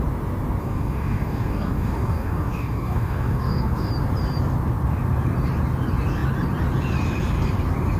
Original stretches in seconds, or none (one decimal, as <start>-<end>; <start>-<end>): 0.0-0.6; 3.9-8.0